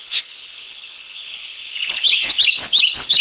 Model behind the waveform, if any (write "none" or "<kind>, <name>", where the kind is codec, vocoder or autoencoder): codec, HILCodec